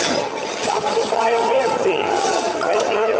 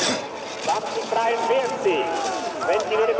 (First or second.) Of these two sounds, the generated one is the first